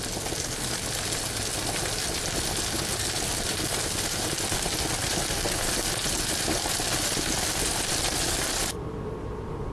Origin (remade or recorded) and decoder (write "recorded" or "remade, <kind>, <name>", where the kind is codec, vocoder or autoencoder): recorded